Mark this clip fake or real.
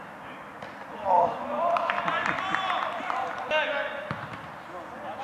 real